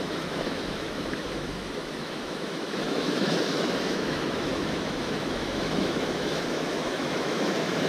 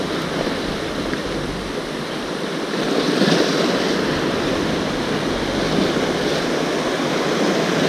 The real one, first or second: second